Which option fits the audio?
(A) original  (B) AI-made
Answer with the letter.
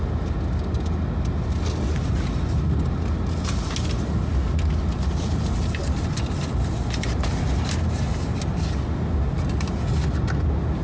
A